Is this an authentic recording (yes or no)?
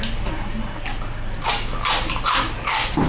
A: yes